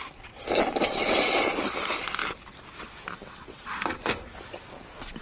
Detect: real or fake real